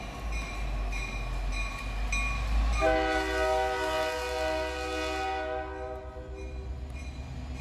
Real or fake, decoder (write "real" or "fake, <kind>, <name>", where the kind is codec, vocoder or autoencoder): real